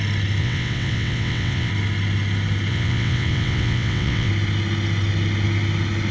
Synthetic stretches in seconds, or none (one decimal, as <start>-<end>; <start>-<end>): 0.4-1.7; 2.7-4.3